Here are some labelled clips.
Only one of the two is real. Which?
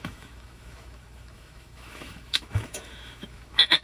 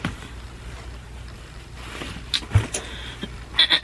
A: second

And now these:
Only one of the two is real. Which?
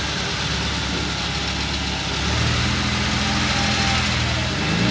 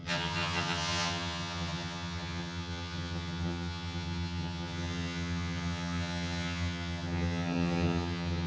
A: first